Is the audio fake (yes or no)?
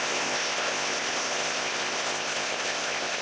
yes